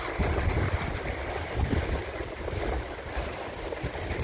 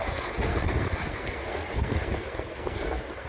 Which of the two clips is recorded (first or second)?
first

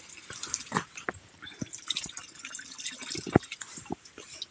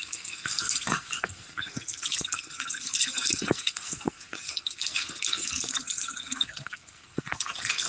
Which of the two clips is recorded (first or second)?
first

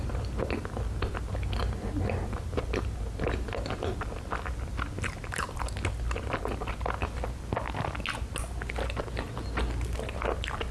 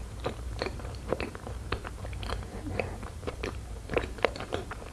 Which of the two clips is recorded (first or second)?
first